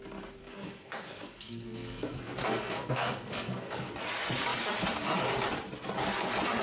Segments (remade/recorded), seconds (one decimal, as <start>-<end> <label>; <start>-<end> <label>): 0.0-0.4 recorded; 0.4-3.9 remade; 3.9-6.6 recorded